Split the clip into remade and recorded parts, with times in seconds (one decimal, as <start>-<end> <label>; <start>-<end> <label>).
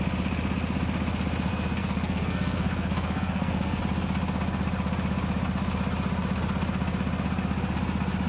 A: 0.0-1.5 recorded; 1.5-3.8 remade; 3.8-8.3 recorded